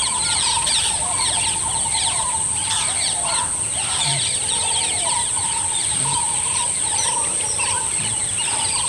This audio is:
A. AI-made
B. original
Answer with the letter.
A